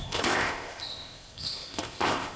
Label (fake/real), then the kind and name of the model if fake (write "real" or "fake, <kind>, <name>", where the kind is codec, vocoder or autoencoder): fake, codec, ZipCodec